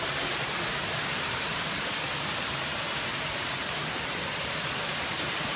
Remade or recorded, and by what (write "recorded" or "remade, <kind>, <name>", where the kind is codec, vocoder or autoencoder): remade, vocoder, BigVGAN v2